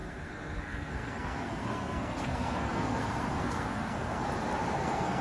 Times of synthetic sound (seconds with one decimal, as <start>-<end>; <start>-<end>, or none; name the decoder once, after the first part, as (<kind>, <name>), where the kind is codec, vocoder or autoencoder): 0.0-4.2 (codec, SNAC); 4.7-5.2